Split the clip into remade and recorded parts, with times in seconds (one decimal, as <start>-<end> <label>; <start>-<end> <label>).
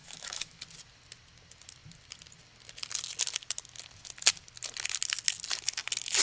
0.0-0.6 remade; 0.6-6.2 recorded